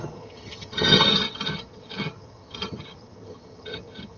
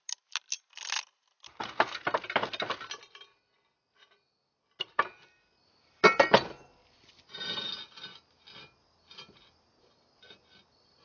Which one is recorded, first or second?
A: second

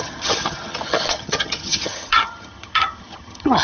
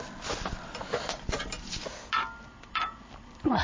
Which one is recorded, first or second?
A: second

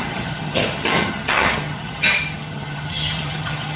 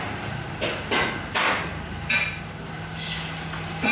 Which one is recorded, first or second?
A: second